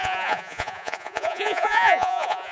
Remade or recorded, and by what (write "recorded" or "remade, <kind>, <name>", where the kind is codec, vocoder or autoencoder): remade, vocoder, Vocos